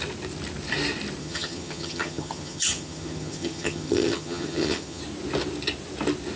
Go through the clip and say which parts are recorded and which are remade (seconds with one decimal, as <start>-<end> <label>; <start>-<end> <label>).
0.0-1.2 recorded; 1.2-5.0 remade; 5.0-6.4 recorded

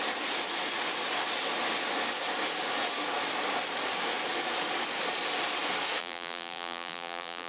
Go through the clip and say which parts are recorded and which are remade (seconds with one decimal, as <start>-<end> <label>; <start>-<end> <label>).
0.0-6.0 recorded; 6.0-7.5 remade

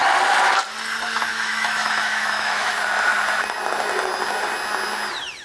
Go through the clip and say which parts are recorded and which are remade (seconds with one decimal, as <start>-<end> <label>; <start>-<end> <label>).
0.0-1.3 recorded; 1.3-2.7 remade; 2.7-5.4 recorded

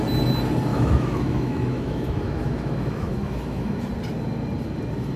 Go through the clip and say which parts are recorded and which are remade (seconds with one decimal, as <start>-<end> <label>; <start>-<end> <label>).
0.0-0.7 recorded; 0.7-3.8 remade; 3.8-5.2 recorded

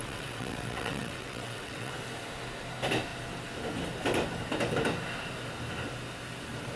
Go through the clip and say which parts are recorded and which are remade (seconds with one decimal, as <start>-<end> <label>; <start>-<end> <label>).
0.0-1.9 remade; 1.9-6.8 recorded